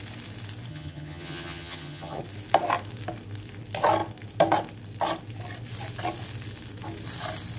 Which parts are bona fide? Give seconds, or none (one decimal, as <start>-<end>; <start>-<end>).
0.0-0.7; 2.2-7.6